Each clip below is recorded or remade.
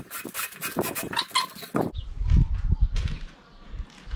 recorded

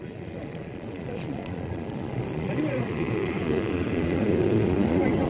remade